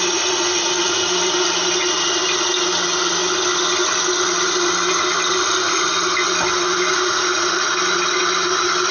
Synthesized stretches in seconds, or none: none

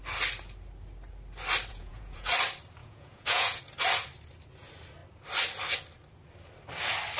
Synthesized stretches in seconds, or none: 1.7-2.3 (vocoder, Vocos); 2.8-3.6

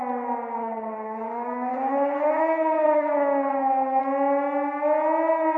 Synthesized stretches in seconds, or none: 0.6-4.0 (codec, SNAC)

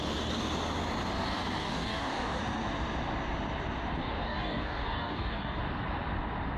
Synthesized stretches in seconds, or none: 1.6-2.4 (codec, DAC); 4.0-5.6